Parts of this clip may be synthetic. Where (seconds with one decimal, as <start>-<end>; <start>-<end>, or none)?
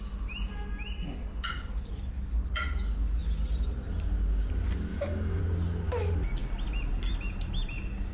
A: 4.9-5.4